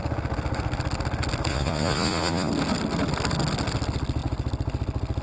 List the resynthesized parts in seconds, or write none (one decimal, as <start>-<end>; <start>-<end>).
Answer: 1.5-2.5